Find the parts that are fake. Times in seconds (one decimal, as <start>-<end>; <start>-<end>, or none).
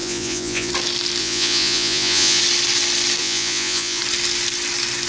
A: 0.0-0.7; 1.2-2.4; 3.2-4.0